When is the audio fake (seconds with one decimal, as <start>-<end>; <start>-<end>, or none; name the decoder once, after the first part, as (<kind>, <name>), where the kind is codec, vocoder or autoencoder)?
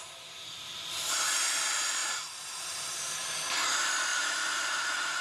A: 0.5-1.4 (vocoder, BigVGAN v2); 2.0-3.0; 4.1-4.6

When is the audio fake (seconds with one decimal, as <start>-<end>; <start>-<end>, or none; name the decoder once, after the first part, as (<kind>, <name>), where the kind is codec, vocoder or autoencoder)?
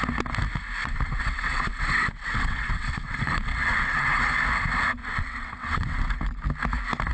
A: 0.8-4.2 (vocoder, WaveNeXt); 5.0-6.1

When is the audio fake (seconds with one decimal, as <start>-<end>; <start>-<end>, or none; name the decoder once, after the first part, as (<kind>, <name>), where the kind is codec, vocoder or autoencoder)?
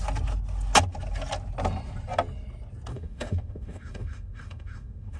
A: 2.9-5.2 (autoencoder, DAC-VAE)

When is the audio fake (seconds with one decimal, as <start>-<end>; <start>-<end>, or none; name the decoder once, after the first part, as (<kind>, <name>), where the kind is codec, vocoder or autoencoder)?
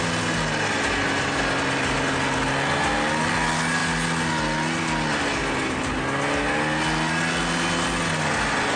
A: none